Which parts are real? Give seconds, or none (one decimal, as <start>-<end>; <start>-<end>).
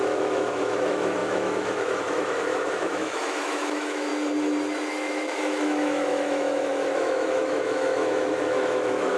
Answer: 4.1-4.9